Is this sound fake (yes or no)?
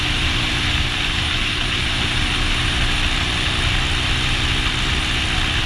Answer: no